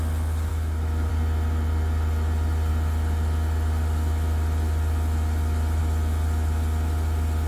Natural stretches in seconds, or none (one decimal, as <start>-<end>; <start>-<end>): 0.0-0.5; 1.1-7.5